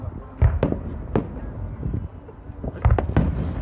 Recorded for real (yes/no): yes